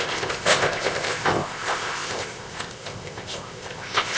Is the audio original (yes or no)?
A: no